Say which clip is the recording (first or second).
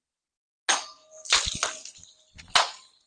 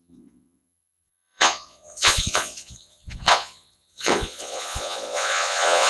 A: first